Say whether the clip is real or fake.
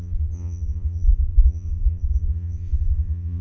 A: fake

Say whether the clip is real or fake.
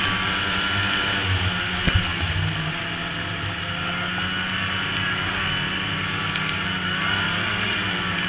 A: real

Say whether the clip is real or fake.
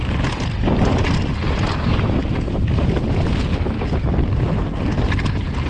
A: real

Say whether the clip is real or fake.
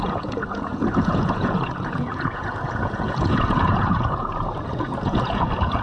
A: fake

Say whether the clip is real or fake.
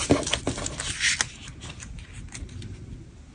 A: real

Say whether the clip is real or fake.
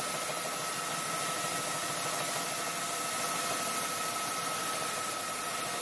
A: real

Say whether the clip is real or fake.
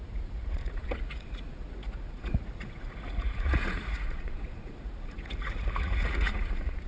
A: fake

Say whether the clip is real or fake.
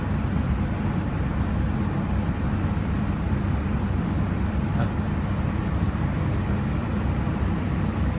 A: real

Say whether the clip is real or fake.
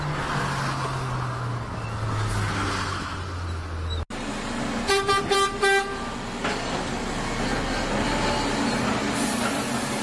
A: real